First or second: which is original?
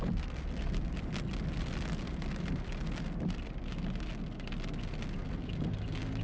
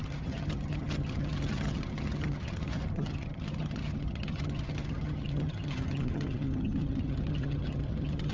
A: first